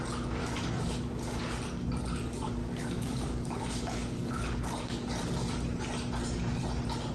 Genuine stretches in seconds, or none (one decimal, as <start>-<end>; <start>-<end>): 0.0-0.4; 1.4-2.6; 5.1-7.1